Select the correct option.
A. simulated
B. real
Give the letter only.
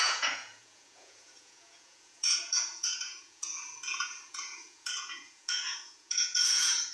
A